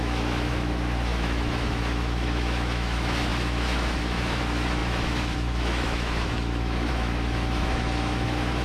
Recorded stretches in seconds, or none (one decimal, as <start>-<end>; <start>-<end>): none